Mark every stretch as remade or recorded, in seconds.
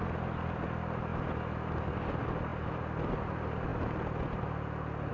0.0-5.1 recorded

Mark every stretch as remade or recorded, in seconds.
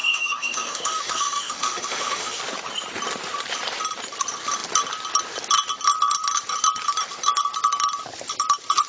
0.0-2.4 remade; 2.4-8.9 recorded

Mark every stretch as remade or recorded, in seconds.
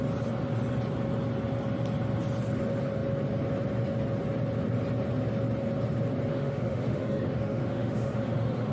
0.0-6.3 recorded; 6.3-8.7 remade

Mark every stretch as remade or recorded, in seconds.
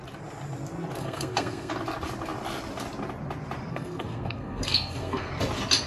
0.0-1.0 recorded; 1.0-1.7 remade; 1.7-3.7 recorded; 3.7-5.3 remade; 5.3-5.9 recorded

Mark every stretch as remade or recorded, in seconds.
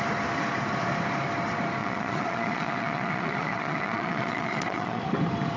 0.0-1.8 recorded; 1.8-5.0 remade; 5.0-5.6 recorded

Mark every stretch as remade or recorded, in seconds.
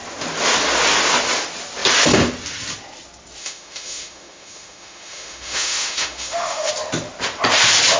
0.0-3.4 recorded; 3.4-6.7 remade; 6.7-8.0 recorded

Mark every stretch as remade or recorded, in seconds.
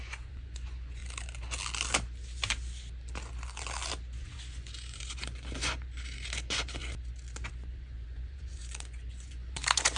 0.0-1.0 remade; 1.0-4.2 recorded; 4.2-6.8 remade; 6.8-7.5 recorded; 7.5-10.0 remade